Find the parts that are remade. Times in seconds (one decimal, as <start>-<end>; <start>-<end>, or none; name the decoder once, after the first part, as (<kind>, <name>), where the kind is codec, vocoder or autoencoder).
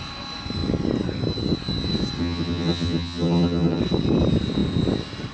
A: 2.2-3.8 (vocoder, HiFi-GAN)